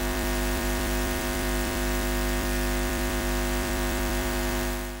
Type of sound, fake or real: fake